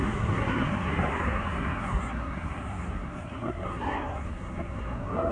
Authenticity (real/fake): fake